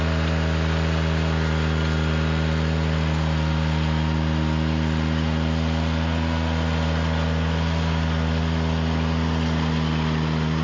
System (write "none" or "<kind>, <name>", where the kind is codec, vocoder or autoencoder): none